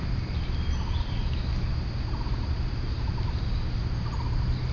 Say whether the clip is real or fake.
real